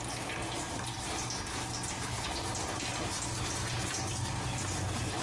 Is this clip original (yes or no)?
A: yes